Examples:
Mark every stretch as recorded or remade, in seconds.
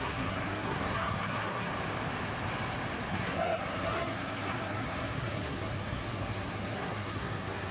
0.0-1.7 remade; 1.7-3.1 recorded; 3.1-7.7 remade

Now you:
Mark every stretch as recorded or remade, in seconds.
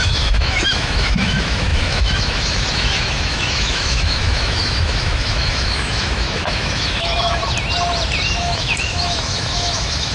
0.0-7.4 remade; 7.4-8.4 recorded; 8.4-10.1 remade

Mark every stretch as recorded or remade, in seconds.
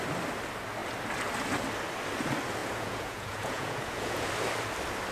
0.0-2.6 recorded; 2.6-4.3 remade; 4.3-5.1 recorded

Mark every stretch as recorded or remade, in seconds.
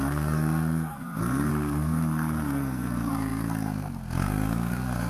0.0-5.1 remade